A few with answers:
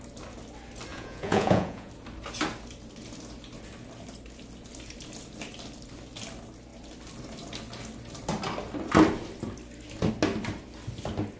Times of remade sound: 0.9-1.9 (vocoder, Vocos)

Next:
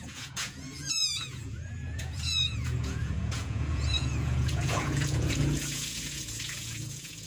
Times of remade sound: 0.0-7.3 (vocoder, Vocos)

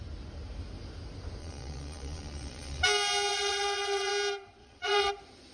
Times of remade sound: 1.4-2.8 (vocoder, Vocos); 3.3-4.1; 4.6-5.1

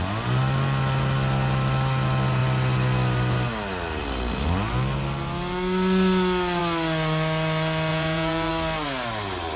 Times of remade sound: 7.9-8.5 (vocoder, Vocos)